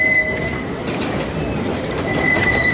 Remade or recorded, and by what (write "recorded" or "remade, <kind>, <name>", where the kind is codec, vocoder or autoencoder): recorded